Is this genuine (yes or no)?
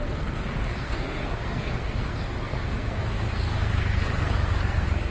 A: no